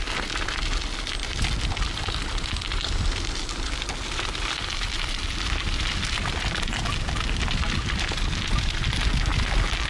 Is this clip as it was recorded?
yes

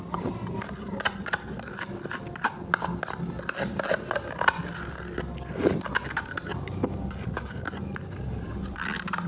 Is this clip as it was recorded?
yes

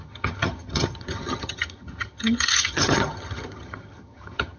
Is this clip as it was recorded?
no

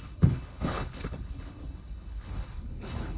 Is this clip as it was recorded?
no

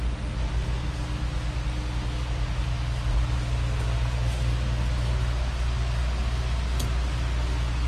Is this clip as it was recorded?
yes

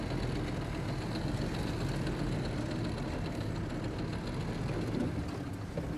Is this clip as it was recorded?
yes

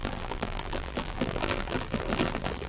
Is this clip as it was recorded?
no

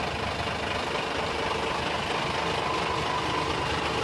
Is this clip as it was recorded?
yes